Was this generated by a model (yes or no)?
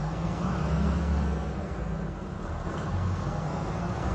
yes